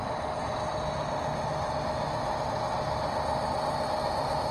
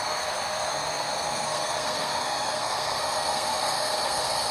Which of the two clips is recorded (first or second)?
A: first